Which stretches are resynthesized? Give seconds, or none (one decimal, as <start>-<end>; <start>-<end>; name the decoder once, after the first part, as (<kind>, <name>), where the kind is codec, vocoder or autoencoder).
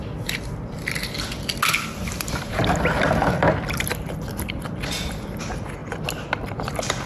none